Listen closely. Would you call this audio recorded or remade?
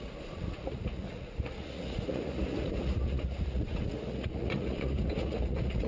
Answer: remade